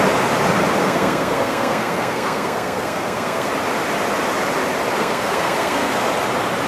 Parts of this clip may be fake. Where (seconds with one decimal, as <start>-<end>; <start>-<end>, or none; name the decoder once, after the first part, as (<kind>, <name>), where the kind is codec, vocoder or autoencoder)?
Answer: 0.8-3.5 (codec, SNAC); 5.0-6.1